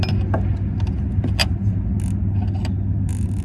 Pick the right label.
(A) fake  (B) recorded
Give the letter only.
B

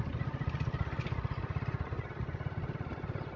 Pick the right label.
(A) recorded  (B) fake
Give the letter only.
A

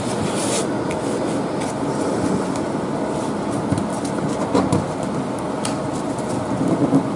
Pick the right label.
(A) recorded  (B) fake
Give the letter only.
A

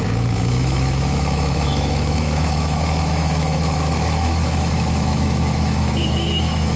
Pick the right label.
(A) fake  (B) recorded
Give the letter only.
A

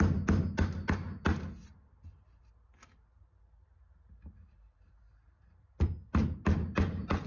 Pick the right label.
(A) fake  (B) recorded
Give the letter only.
B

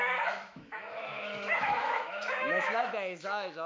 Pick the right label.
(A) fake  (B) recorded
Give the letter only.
A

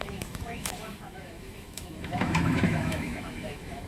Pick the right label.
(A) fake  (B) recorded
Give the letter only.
A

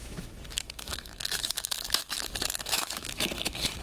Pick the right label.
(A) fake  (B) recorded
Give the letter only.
A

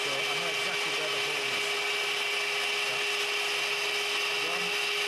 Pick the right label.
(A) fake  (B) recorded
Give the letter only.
B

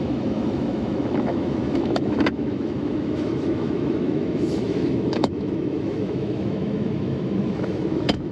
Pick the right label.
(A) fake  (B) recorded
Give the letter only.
A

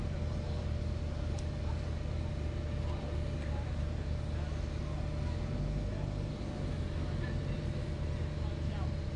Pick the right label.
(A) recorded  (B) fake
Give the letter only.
A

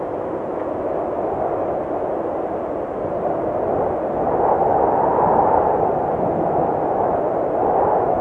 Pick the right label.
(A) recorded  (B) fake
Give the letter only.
A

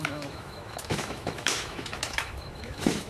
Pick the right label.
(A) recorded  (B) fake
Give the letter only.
B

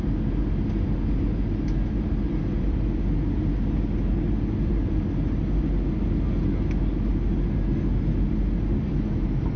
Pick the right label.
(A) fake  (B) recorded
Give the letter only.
B